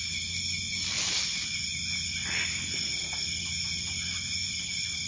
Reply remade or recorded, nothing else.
recorded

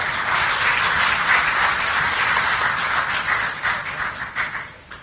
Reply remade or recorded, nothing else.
recorded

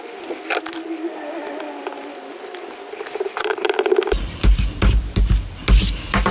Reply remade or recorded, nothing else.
recorded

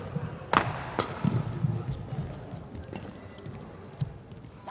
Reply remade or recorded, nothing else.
recorded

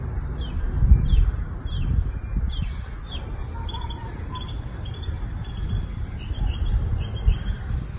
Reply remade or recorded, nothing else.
recorded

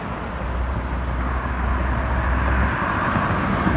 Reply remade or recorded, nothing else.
recorded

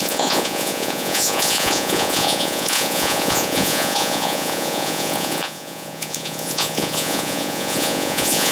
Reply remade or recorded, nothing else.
remade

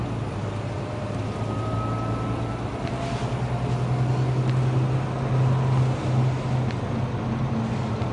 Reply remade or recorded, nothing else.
recorded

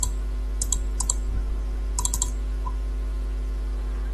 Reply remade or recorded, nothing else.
recorded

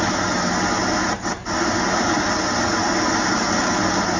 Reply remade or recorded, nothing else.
recorded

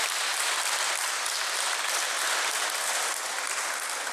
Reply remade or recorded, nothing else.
recorded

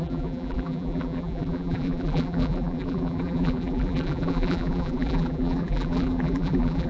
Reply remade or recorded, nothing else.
remade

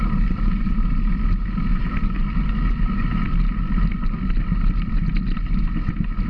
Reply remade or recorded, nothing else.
recorded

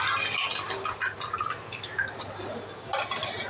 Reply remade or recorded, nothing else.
recorded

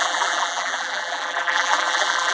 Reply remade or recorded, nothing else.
remade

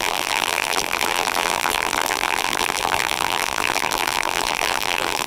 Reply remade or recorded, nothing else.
remade